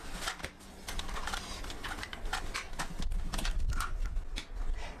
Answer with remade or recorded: recorded